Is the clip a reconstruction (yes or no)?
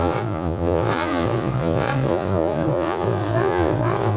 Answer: yes